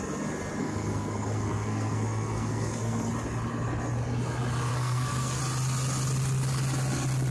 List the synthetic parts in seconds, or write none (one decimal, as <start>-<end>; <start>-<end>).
0.6-3.1; 4.7-5.4